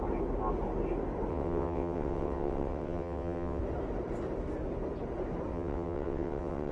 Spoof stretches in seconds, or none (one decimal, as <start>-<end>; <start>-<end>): 1.3-3.6; 5.5-6.7